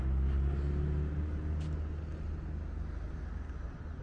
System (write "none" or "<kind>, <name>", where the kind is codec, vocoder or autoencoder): none